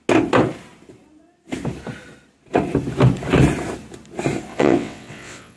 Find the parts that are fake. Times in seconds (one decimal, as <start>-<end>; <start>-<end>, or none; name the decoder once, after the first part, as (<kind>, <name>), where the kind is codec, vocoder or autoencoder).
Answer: 4.5-5.6 (vocoder, WaveNeXt)

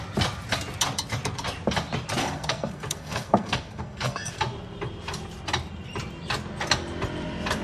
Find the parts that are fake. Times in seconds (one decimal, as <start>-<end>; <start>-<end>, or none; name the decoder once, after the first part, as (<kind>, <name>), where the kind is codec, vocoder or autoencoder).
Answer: 2.2-4.4 (codec, SNAC)